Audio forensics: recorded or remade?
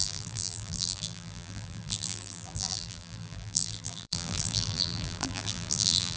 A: remade